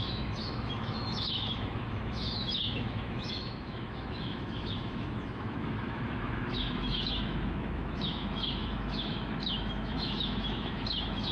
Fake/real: fake